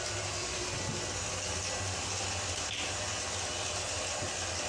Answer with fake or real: real